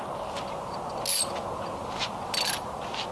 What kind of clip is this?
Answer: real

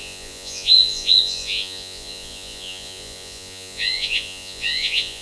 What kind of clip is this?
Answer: fake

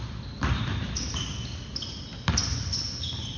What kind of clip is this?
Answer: real